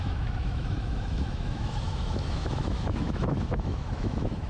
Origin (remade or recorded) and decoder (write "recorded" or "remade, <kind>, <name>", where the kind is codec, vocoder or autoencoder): remade, autoencoder, DAC-VAE